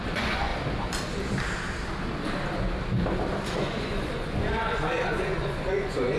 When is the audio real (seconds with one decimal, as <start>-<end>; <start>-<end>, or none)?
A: 0.5-3.5